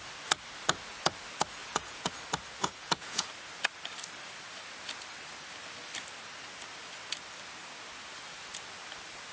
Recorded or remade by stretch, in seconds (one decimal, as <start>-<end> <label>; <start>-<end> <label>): 0.0-1.6 recorded; 1.6-2.1 remade; 2.1-2.6 recorded; 2.6-3.3 remade; 3.3-9.3 recorded